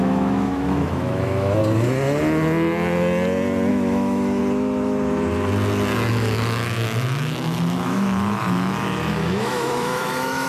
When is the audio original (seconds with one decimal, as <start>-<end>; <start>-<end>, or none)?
1.6-3.7; 4.4-6.1